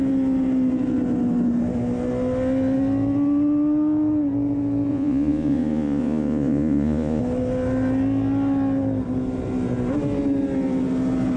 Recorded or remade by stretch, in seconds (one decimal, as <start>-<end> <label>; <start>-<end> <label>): 0.0-4.9 recorded; 4.9-7.2 remade; 7.2-11.4 recorded